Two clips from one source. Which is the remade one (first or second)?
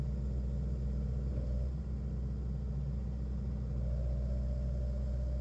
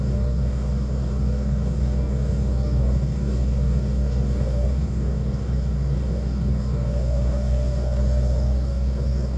second